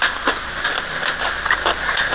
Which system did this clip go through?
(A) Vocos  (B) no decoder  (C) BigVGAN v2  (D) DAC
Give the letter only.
B